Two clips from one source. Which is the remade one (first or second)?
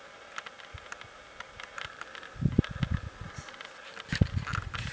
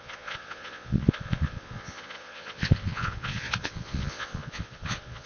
second